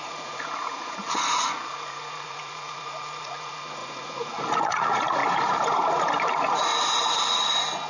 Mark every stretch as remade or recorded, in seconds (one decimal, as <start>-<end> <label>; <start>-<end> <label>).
0.0-5.2 remade; 5.2-6.3 recorded; 6.3-6.7 remade; 6.7-7.9 recorded